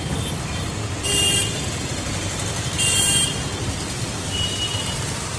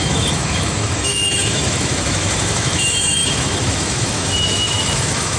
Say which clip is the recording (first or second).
first